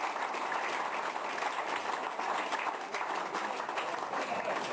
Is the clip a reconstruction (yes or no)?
no